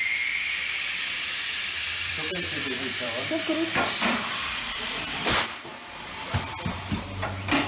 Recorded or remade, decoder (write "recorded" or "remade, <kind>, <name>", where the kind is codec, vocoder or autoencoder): remade, vocoder, BigVGAN v2